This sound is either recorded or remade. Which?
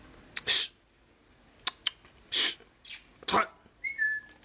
recorded